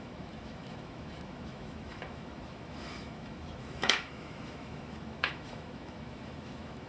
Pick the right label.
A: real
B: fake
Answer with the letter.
B